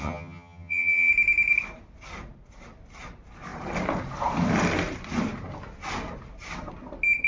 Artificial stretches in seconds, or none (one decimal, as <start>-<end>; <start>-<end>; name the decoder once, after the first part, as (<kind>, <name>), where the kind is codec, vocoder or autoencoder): 0.0-1.1 (vocoder, HiFi-GAN)